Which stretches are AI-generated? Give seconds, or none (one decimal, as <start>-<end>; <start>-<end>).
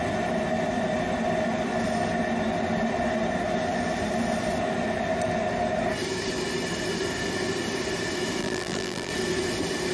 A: 8.4-9.1